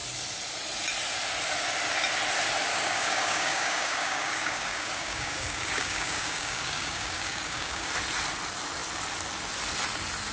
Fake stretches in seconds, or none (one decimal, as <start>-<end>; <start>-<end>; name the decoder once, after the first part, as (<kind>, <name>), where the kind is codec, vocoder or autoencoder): 2.7-7.9 (codec, DAC)